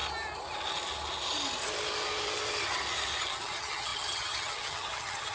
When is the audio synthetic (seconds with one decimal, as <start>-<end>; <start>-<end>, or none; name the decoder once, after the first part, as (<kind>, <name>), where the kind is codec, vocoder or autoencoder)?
3.2-5.3 (vocoder, HiFi-GAN)